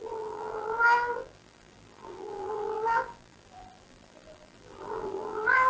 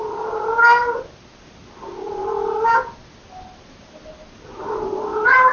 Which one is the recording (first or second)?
second